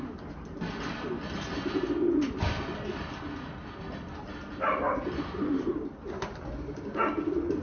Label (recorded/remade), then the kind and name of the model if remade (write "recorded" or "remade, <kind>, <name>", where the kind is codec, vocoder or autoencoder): recorded